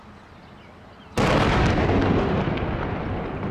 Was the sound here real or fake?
real